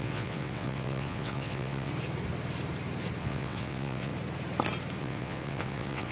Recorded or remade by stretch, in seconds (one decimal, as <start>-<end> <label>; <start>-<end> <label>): 0.0-1.9 remade; 1.9-3.2 recorded; 3.2-4.1 remade; 4.1-5.0 recorded; 5.0-6.1 remade